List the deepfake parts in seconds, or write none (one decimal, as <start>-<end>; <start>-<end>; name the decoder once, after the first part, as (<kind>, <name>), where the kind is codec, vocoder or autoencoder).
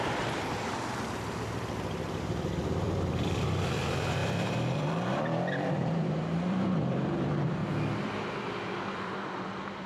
0.0-7.6 (vocoder, BigVGAN v2); 8.4-9.9